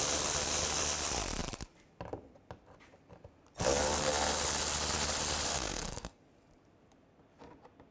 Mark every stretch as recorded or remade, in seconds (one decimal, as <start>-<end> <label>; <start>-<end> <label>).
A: 0.0-5.5 recorded; 5.5-6.2 remade; 6.2-7.9 recorded